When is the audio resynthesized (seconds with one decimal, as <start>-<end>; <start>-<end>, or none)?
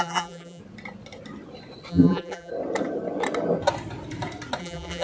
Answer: 0.0-0.6; 1.9-2.5; 4.6-5.0